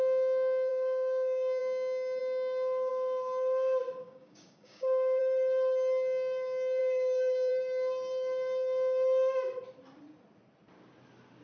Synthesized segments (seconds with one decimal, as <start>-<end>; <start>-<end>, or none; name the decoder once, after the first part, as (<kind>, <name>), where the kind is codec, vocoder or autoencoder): 0.7-1.6 (codec, DAC); 4.0-5.2; 6.8-7.5

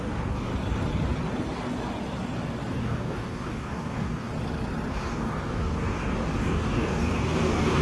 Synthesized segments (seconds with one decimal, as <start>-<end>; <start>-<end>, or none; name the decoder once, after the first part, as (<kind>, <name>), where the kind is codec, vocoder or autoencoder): 0.0-0.5 (codec, DAC); 2.7-4.3; 4.9-7.8

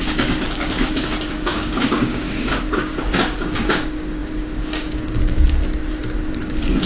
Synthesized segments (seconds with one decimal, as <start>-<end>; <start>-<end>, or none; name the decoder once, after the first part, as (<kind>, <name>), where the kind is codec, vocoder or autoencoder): 0.0-5.6 (codec, DAC); 6.3-6.9